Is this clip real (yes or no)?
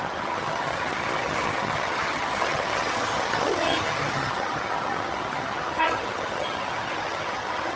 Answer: no